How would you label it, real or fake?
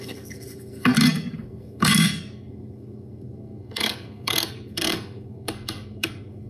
fake